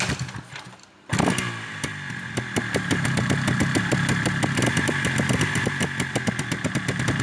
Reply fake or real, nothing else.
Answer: real